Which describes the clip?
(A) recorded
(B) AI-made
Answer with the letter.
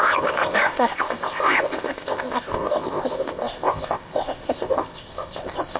B